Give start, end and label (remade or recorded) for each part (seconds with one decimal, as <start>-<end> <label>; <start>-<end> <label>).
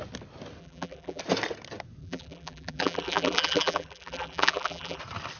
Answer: 0.0-0.6 recorded; 0.6-1.2 remade; 1.2-2.0 recorded; 2.0-5.0 remade; 5.0-5.4 recorded